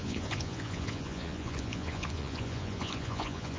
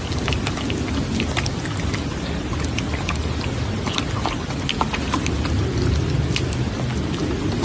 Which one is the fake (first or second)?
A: first